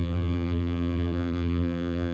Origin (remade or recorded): remade